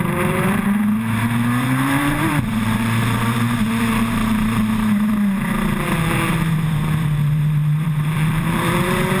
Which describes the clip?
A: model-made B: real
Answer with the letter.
A